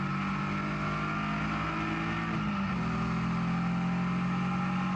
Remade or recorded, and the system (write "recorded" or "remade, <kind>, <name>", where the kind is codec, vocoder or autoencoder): recorded